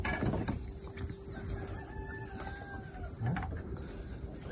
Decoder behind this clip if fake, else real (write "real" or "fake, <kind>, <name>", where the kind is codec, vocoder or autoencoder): real